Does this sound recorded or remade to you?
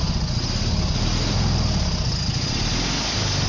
recorded